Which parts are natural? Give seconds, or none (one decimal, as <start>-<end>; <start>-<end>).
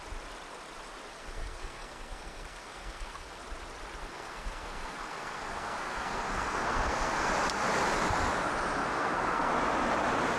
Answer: 0.0-1.1; 3.4-4.0; 7.3-8.8; 9.5-10.4